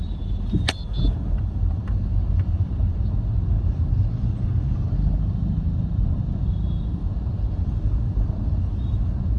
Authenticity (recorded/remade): remade